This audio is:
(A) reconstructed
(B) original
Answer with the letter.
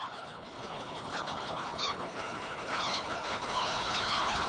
A